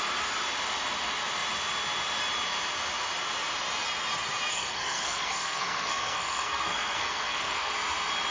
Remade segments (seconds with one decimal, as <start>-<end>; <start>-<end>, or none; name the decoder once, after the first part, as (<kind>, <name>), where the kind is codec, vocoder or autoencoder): 4.5-7.7 (codec, SNAC)